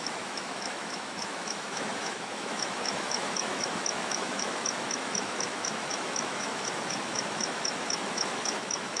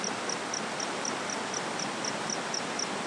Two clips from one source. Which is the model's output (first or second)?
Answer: first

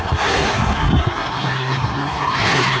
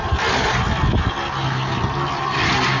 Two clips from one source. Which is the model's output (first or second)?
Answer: first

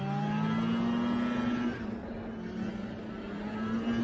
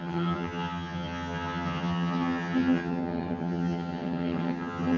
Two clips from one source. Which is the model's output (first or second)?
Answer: second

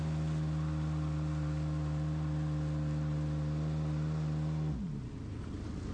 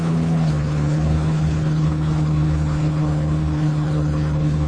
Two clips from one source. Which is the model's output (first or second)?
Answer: second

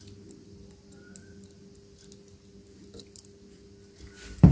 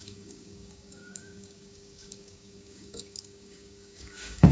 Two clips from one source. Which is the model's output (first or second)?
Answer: second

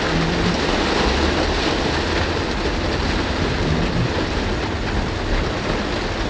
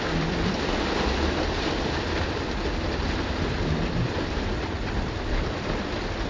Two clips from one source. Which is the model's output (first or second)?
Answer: second